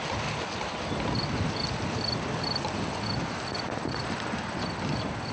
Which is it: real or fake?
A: real